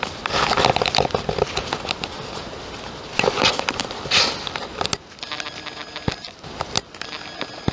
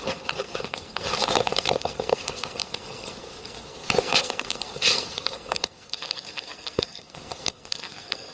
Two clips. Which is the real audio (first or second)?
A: first